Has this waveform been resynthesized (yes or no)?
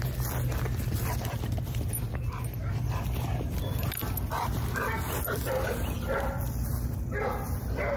no